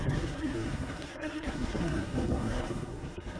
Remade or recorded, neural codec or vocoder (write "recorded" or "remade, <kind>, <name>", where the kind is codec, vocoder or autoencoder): remade, codec, SNAC